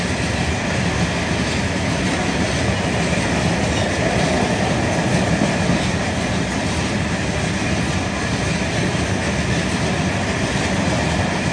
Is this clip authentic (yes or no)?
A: yes